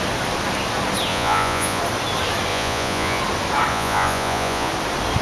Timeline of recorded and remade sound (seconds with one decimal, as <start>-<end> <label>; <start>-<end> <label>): 0.0-1.1 recorded; 1.1-1.8 remade; 1.8-2.5 recorded; 2.5-3.2 remade; 3.2-3.7 recorded; 3.7-4.7 remade; 4.7-5.2 recorded